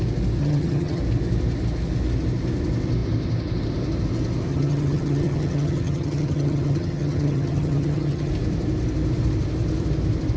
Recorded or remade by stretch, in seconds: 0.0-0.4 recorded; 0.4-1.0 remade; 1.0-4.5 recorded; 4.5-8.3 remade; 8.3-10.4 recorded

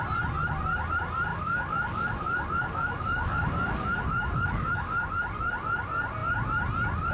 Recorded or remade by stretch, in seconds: 0.0-1.3 recorded; 1.3-5.1 remade; 5.1-7.1 recorded

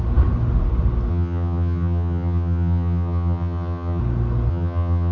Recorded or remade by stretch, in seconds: 0.0-1.1 recorded; 1.1-4.0 remade; 4.0-4.5 recorded; 4.5-5.1 remade

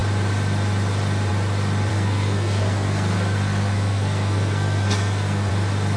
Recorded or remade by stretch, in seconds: 0.0-1.9 recorded; 1.9-5.5 remade; 5.5-6.0 recorded

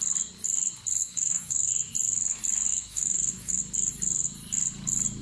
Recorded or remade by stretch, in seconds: 0.0-1.0 recorded; 1.0-1.7 remade; 1.7-2.7 recorded; 2.7-3.6 remade; 3.6-5.2 recorded

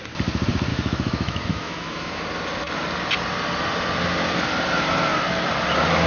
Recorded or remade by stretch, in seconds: 0.0-0.7 recorded; 0.7-2.2 remade; 2.2-6.1 recorded

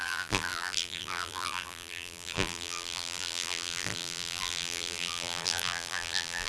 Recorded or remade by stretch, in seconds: 0.0-6.5 remade